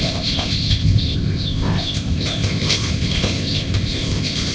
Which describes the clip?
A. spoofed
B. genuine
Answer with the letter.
A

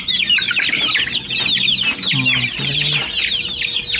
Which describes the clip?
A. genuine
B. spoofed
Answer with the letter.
A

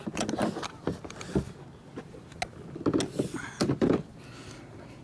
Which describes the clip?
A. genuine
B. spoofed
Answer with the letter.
A